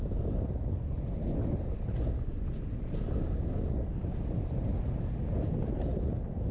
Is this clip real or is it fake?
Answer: real